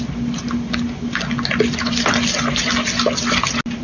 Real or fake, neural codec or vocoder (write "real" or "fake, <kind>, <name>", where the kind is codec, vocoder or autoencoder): real